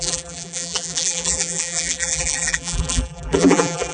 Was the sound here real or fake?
fake